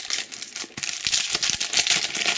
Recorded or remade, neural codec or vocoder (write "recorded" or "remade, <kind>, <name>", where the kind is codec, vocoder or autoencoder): recorded